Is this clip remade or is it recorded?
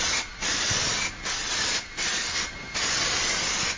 recorded